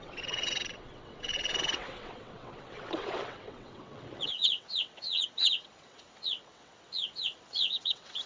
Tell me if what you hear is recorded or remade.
remade